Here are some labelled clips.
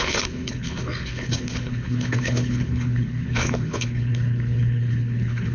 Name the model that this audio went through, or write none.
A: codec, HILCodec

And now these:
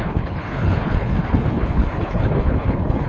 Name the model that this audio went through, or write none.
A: codec, HILCodec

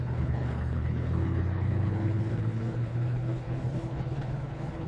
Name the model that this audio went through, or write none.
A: codec, HILCodec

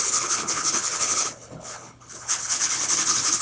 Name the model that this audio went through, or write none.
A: codec, HILCodec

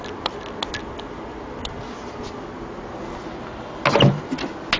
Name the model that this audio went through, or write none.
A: none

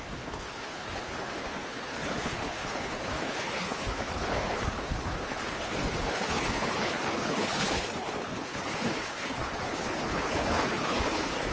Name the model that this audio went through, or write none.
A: codec, HILCodec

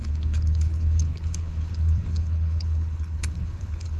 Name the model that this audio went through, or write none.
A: codec, HILCodec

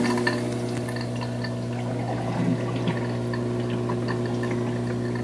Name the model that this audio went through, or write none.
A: none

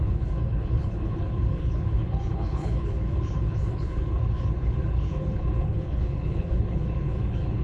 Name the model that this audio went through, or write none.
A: codec, HILCodec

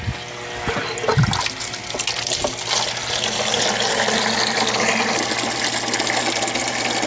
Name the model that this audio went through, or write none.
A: none